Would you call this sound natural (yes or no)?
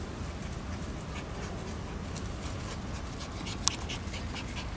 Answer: yes